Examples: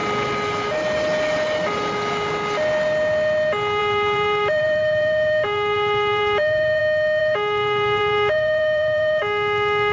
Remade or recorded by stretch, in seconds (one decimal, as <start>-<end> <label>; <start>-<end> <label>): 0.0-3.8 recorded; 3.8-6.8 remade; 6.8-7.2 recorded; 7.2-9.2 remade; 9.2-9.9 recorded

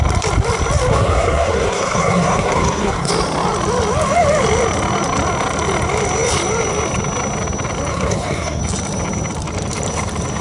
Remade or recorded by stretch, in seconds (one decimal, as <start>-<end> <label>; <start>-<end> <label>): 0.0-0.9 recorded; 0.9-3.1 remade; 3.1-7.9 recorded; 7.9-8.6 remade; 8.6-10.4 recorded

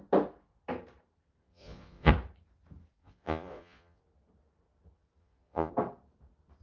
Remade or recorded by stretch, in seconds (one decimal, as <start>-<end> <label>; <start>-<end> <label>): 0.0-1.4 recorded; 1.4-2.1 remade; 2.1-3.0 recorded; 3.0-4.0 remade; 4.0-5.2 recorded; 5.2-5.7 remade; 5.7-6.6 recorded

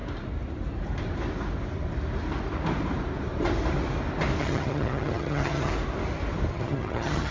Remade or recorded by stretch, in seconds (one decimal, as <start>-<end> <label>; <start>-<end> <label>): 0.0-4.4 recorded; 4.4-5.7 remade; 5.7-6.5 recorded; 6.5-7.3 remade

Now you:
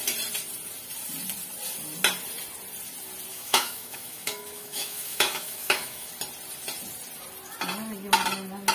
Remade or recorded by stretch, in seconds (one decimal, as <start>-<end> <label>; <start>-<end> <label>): 0.0-3.3 recorded; 3.3-6.1 remade; 6.1-8.7 recorded